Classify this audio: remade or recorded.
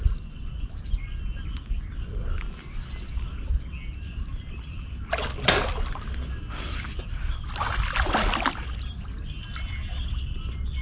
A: recorded